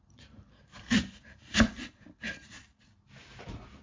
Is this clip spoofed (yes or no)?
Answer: yes